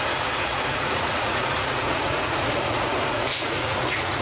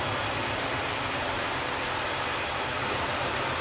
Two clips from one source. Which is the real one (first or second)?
second